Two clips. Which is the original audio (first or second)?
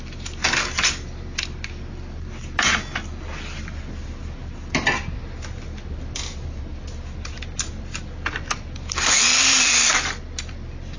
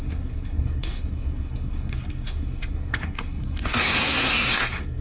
first